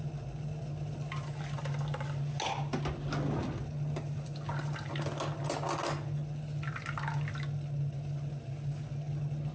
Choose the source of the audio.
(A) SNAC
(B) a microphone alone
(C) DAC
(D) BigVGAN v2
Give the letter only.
B